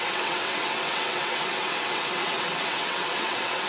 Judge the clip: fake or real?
fake